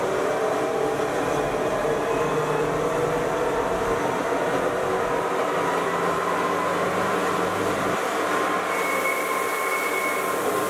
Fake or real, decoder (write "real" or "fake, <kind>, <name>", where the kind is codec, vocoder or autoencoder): real